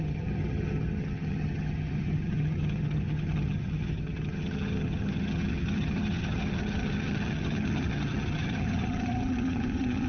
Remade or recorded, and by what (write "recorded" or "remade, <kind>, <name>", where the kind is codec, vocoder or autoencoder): remade, vocoder, HiFi-GAN